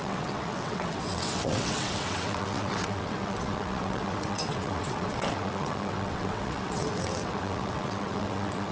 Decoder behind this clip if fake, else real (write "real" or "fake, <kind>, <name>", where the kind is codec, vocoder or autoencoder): fake, vocoder, WaveNeXt